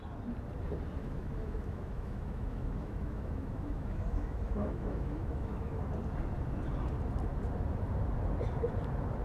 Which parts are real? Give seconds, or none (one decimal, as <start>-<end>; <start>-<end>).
0.0-1.0; 5.8-9.2